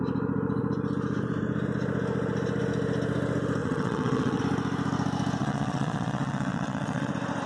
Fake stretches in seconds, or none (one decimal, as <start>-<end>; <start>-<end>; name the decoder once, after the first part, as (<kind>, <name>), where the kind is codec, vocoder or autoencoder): 3.6-4.4 (vocoder, WaveNeXt); 5.4-7.1